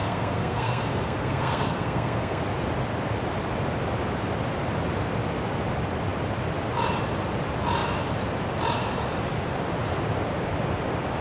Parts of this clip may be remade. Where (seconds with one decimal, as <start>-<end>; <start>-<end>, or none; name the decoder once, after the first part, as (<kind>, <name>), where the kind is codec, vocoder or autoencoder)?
0.0-2.4 (codec, SNAC)